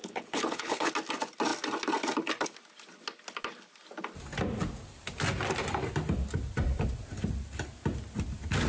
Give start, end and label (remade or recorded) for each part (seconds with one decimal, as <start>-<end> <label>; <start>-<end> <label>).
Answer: 0.0-0.9 remade; 0.9-8.7 recorded